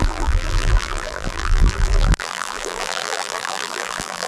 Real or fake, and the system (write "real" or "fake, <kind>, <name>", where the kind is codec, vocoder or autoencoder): fake, vocoder, BigVGAN v2